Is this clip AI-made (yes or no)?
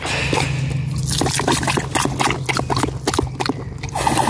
no